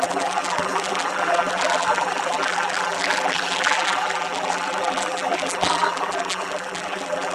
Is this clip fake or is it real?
fake